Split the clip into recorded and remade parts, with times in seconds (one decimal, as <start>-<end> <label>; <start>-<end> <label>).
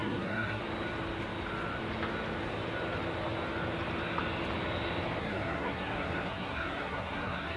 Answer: 0.0-0.6 remade; 0.6-5.2 recorded; 5.2-7.6 remade